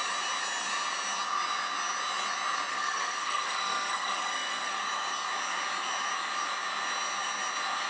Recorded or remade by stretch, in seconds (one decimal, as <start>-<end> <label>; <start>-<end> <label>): 0.0-2.7 recorded; 2.7-4.8 remade; 4.8-7.9 recorded

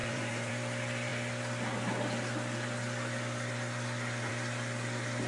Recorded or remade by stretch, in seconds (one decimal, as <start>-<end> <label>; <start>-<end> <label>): 0.0-0.5 remade; 0.5-5.3 recorded

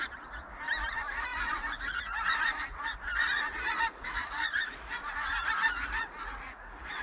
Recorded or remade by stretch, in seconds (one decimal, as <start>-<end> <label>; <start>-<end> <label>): 0.0-0.9 recorded; 0.9-7.0 remade

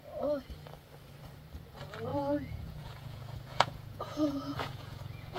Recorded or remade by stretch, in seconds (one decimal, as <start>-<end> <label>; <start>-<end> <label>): 0.0-2.1 recorded; 2.1-5.4 remade